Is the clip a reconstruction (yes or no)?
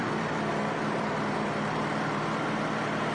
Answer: yes